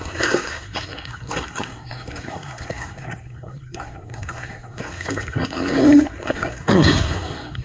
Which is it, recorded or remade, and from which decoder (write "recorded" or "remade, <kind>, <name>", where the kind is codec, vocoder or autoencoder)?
remade, codec, SNAC